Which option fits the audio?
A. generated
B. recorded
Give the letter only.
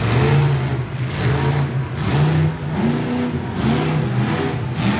B